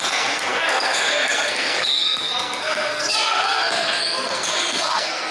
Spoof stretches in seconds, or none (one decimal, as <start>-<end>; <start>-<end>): 0.0-5.3